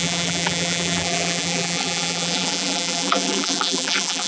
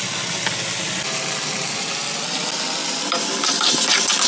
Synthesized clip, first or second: first